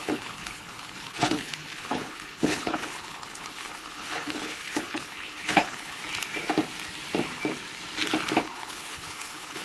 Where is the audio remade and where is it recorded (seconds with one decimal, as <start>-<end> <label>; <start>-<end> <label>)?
0.0-6.0 remade; 6.0-8.4 recorded; 8.4-9.6 remade